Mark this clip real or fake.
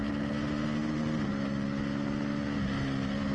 real